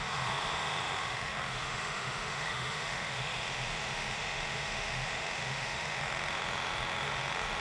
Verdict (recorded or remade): remade